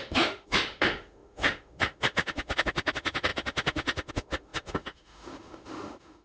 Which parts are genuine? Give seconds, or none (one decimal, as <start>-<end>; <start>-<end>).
none

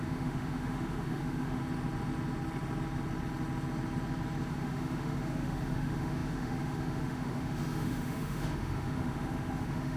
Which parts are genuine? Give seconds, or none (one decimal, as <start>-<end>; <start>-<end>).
1.6-4.5

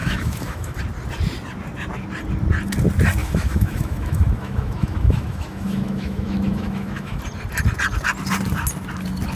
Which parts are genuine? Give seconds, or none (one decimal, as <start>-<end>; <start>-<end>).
0.8-3.2; 7.2-9.4

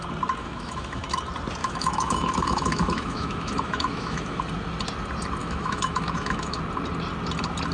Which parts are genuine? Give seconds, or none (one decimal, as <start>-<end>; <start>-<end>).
0.0-0.4; 1.0-1.6; 4.4-5.4; 6.6-7.7

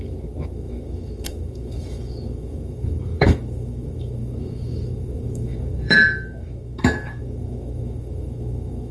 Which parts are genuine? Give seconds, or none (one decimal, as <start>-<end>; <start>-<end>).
none

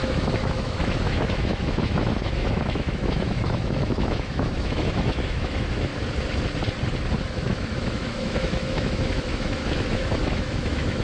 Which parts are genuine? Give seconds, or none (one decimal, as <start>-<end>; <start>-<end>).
5.9-7.2

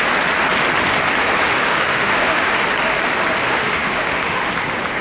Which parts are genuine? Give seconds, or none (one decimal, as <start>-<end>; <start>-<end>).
0.0-1.7; 2.5-3.4; 4.5-5.0